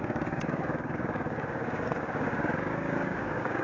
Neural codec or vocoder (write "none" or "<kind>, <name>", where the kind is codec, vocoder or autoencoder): codec, DAC